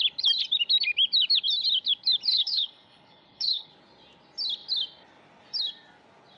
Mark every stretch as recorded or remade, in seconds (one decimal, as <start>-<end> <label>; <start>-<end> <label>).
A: 0.0-2.3 recorded; 2.3-3.7 remade; 3.7-6.4 recorded